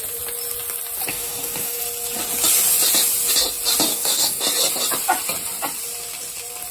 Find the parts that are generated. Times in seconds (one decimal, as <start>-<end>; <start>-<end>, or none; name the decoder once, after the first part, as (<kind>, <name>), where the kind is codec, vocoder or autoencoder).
1.1-1.8 (codec, DAC); 3.9-4.4